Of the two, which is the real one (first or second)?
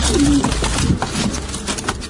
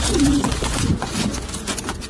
first